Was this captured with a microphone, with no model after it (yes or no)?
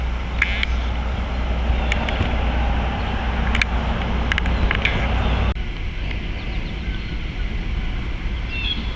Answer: yes